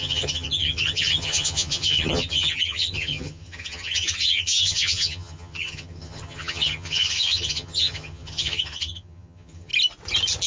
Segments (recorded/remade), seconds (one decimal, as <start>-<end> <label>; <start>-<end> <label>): 0.0-9.7 remade; 9.7-10.5 recorded